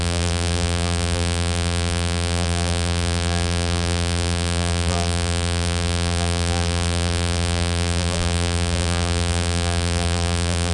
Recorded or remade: remade